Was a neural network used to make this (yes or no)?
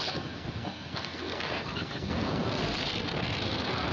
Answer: yes